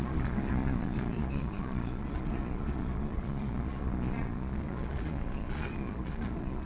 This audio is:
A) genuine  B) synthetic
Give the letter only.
B